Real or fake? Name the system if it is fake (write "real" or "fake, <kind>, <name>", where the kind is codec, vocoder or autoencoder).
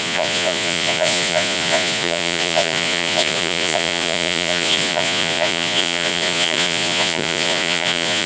fake, vocoder, Vocos